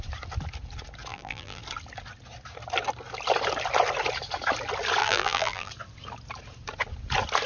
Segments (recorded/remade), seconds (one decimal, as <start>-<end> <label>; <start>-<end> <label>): 0.0-1.1 recorded; 1.1-1.6 remade; 1.6-5.0 recorded; 5.0-5.7 remade; 5.7-7.5 recorded